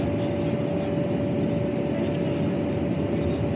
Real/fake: real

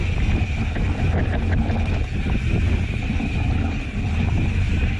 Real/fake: real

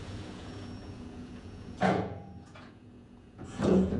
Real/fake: fake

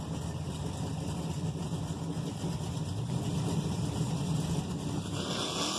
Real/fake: real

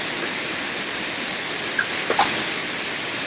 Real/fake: real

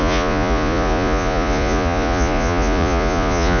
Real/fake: fake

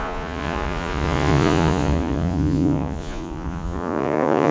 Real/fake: fake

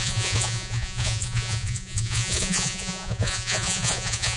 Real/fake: fake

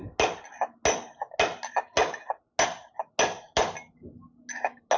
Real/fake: real